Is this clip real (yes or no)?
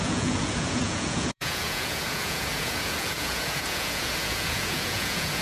no